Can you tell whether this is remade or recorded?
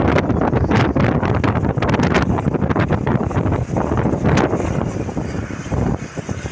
recorded